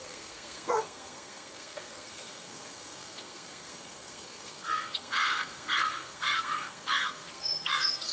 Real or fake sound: fake